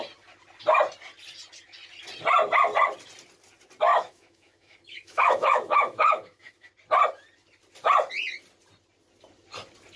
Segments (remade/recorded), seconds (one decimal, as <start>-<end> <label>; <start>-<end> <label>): 0.0-3.9 recorded; 3.9-6.7 remade; 6.7-10.0 recorded